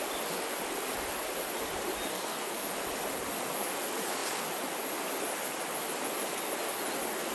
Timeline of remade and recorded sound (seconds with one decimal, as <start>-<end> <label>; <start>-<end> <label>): 0.0-2.1 recorded; 2.1-2.7 remade; 2.7-7.3 recorded